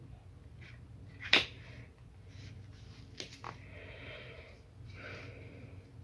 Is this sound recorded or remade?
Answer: recorded